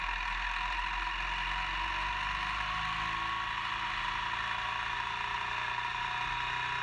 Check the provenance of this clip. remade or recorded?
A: recorded